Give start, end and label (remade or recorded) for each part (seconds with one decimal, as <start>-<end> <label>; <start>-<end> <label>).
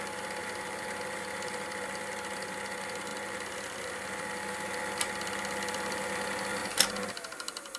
0.0-6.6 recorded; 6.6-7.8 remade